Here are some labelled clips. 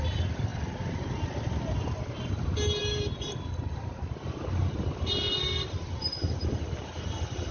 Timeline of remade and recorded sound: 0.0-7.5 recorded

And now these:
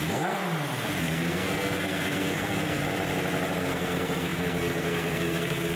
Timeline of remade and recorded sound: 0.0-0.4 remade; 0.4-1.0 recorded; 1.0-2.8 remade; 2.8-3.6 recorded; 3.6-5.8 remade

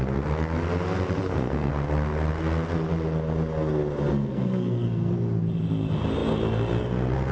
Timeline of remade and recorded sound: 0.0-1.2 recorded; 1.2-1.7 remade; 1.7-4.1 recorded; 4.1-5.1 remade; 5.1-7.3 recorded

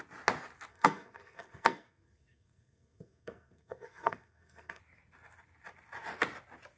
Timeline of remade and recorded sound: 0.0-0.7 recorded; 0.7-4.8 remade; 4.8-6.8 recorded

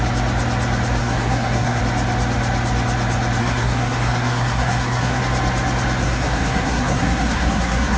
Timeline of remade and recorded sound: 0.0-1.0 recorded; 1.0-1.8 remade; 1.8-3.4 recorded; 3.4-5.2 remade; 5.2-6.0 recorded; 6.0-8.0 remade